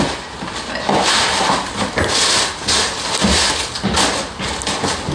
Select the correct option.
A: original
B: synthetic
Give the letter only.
A